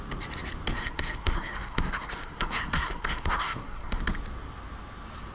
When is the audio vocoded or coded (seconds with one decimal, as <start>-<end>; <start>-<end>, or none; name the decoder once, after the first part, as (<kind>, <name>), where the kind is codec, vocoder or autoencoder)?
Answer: 0.8-4.0 (codec, SNAC)